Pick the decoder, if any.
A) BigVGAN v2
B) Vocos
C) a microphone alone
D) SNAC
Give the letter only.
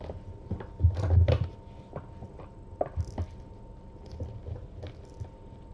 C